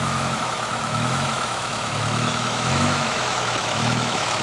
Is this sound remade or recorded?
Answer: remade